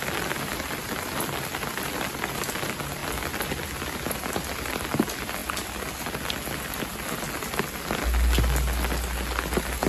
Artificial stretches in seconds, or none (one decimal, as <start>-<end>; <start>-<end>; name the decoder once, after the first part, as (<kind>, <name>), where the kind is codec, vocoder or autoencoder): none